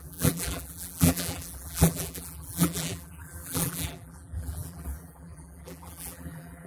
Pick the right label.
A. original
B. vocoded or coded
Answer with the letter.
B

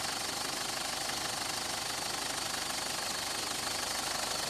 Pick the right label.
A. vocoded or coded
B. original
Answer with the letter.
B